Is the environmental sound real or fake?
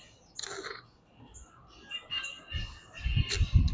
real